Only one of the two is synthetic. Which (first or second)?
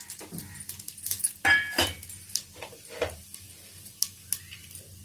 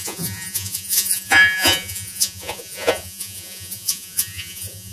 second